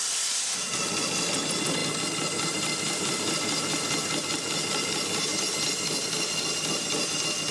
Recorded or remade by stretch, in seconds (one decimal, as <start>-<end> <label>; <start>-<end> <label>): 0.0-1.8 recorded; 1.8-3.0 remade; 3.0-7.5 recorded